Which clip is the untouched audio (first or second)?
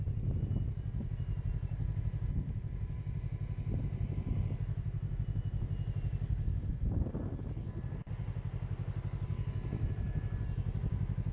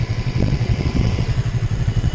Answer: first